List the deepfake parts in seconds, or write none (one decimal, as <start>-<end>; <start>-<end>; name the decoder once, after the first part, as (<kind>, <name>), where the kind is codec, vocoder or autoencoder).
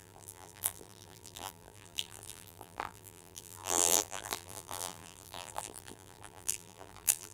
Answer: 0.0-7.3 (vocoder, BigVGAN v2)